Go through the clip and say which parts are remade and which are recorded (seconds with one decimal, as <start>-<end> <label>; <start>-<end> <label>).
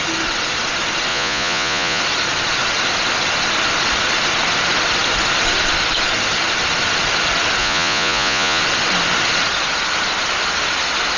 0.0-1.1 recorded; 1.1-2.0 remade; 2.0-7.6 recorded; 7.6-8.6 remade; 8.6-11.2 recorded